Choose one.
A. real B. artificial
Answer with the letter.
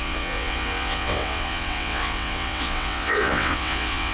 B